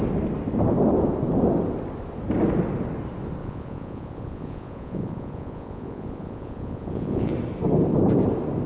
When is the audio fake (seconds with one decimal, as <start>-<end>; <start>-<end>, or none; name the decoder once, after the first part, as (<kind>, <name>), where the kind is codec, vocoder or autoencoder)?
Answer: 3.4-7.3 (vocoder, Vocos)